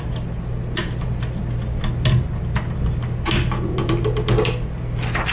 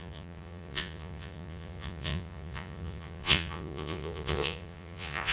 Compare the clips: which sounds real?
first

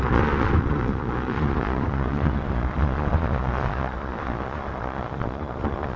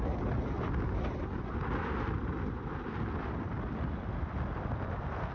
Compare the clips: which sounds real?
second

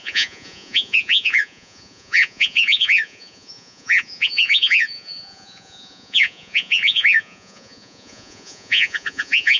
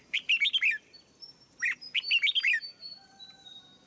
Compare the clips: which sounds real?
second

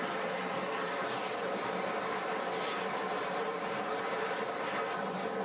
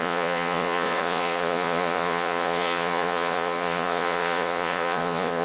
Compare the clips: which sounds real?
first